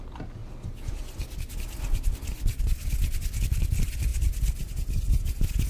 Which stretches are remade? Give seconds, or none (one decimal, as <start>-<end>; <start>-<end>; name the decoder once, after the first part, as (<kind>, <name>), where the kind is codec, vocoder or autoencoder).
none